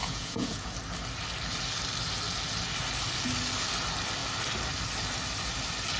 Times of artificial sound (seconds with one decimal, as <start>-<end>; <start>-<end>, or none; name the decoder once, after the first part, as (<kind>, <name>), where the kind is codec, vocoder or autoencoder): 0.0-0.7 (vocoder, Vocos)